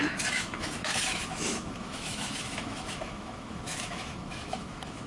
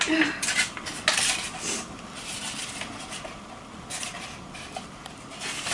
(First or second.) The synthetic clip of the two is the first